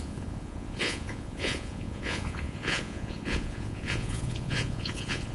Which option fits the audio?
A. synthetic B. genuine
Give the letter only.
A